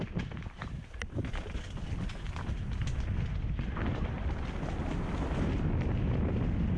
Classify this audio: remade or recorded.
recorded